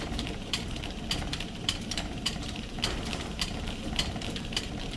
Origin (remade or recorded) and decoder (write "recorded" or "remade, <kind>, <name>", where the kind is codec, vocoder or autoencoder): remade, vocoder, BigVGAN v2